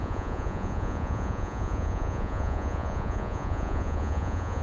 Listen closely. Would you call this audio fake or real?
fake